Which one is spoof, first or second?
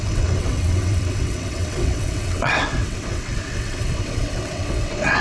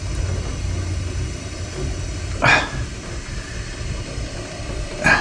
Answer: first